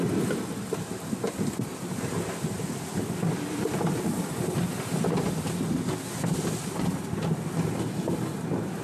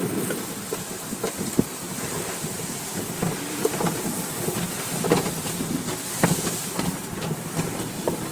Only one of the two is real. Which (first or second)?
first